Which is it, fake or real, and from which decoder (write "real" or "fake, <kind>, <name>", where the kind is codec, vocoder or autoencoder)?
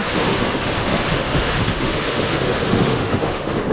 fake, autoencoder, DAC-VAE